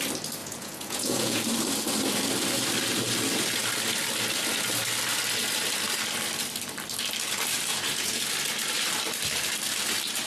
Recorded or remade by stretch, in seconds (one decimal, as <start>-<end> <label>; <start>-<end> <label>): 0.0-0.4 recorded; 0.4-1.4 remade; 1.4-7.7 recorded; 7.7-8.3 remade; 8.3-10.3 recorded